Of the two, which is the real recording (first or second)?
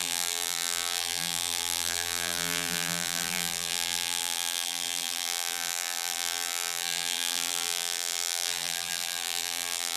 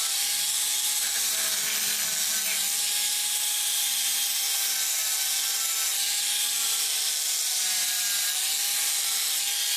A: second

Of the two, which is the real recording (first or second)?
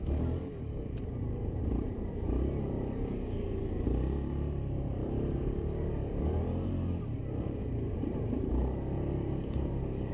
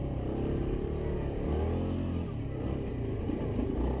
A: second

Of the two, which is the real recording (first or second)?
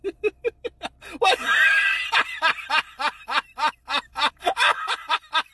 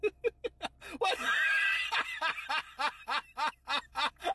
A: second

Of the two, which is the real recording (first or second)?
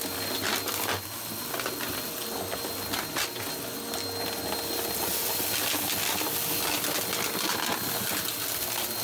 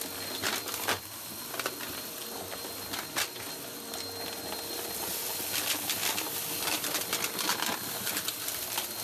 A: first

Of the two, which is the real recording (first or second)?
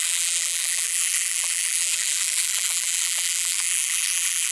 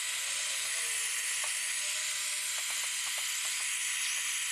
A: second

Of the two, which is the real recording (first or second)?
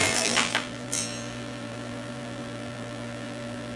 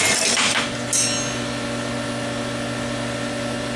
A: second